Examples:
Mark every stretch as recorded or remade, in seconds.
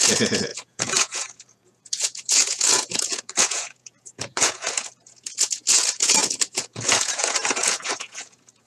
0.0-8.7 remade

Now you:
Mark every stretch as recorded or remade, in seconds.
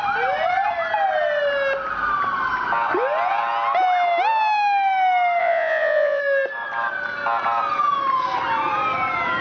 0.0-5.4 recorded; 5.4-6.2 remade; 6.2-9.4 recorded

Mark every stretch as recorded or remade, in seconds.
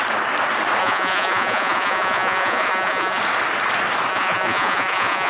0.0-0.8 recorded; 0.8-3.2 remade; 3.2-4.1 recorded; 4.1-5.3 remade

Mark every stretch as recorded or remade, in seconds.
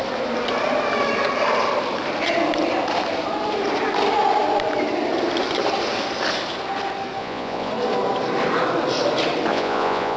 0.0-7.2 recorded; 7.2-7.7 remade; 7.7-9.5 recorded; 9.5-10.2 remade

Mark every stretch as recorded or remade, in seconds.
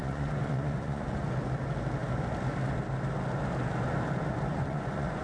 0.0-1.2 remade; 1.2-4.5 recorded; 4.5-5.2 remade